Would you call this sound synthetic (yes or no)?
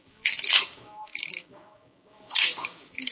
yes